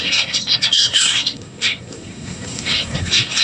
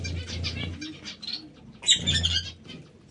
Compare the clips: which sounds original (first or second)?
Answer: second